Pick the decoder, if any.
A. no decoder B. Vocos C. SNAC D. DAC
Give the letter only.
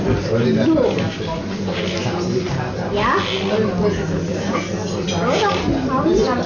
A